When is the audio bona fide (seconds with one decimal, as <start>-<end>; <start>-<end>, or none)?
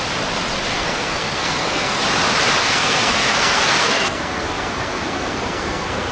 0.0-0.7; 2.0-2.6